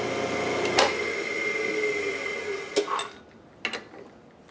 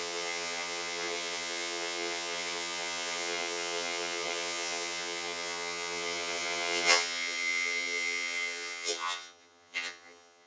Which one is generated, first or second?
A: second